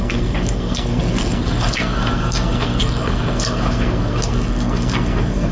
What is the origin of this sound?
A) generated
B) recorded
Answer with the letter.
A